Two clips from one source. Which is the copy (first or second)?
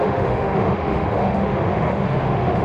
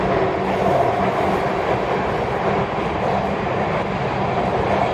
first